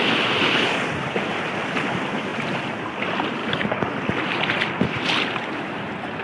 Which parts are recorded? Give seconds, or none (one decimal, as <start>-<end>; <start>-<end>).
0.0-3.4; 3.9-6.2